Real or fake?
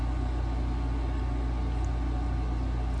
real